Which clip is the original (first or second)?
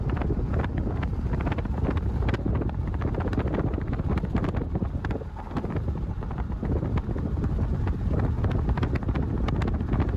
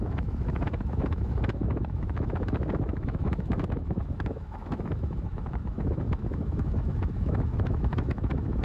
first